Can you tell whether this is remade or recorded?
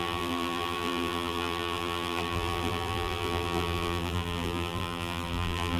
remade